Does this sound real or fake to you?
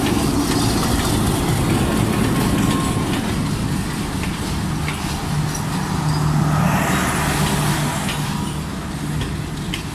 real